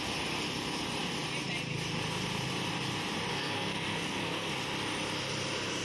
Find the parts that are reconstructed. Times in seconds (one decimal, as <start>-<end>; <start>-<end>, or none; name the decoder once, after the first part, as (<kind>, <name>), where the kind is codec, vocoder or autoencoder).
3.3-4.5 (codec, SNAC)